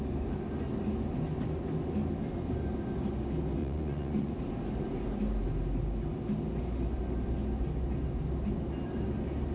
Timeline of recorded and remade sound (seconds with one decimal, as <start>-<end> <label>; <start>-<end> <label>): 0.0-3.6 recorded; 3.6-4.3 remade; 4.3-9.5 recorded